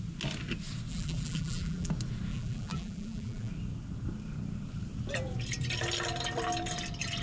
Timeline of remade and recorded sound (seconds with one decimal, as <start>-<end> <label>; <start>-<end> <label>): 0.0-0.9 recorded; 0.9-1.9 remade; 1.9-2.3 recorded; 2.3-3.5 remade; 3.5-7.2 recorded